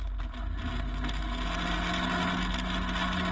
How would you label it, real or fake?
real